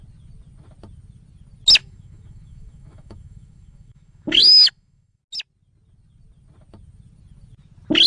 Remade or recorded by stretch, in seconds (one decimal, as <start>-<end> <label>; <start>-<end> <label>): 0.0-1.8 recorded; 1.8-5.2 remade; 5.2-8.1 recorded